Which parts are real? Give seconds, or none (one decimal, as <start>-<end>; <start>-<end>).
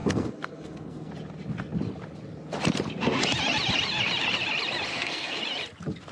1.1-4.9; 5.4-6.1